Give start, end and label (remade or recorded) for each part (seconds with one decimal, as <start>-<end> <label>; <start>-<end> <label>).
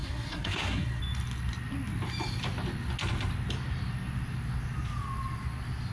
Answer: 0.0-1.0 remade; 1.0-5.9 recorded